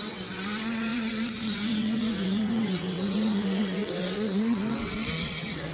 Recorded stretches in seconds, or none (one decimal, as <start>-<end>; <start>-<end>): none